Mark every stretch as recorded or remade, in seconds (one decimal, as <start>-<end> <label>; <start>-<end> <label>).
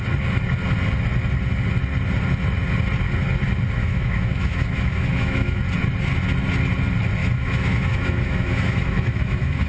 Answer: 0.0-3.8 recorded; 3.8-5.6 remade; 5.6-7.2 recorded; 7.2-9.7 remade